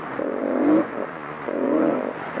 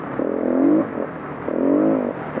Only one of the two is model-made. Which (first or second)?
first